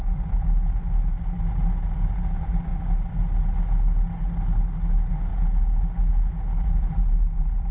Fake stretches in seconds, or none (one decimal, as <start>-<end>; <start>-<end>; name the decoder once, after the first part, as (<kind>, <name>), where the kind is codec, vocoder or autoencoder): none

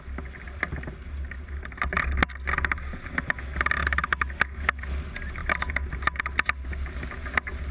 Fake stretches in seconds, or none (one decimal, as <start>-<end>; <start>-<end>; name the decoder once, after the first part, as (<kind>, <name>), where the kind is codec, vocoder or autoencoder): none

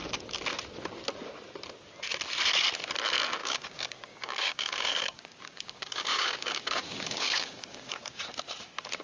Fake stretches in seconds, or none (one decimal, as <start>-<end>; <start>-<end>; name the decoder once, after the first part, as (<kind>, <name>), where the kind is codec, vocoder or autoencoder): 3.4-8.2 (codec, DAC)

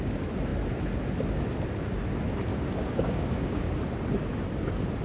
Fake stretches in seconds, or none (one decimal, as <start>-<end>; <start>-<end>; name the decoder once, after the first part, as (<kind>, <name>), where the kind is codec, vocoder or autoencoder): 2.5-3.7 (codec, DAC)

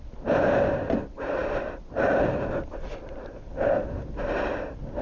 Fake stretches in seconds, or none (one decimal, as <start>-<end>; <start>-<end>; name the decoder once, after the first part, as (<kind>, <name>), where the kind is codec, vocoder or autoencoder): none

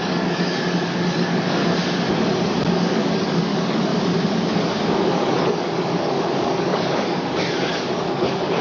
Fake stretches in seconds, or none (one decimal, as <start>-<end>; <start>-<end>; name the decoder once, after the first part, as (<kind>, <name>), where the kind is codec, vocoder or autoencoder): 0.0-1.6 (codec, DAC); 2.6-3.9; 5.0-8.6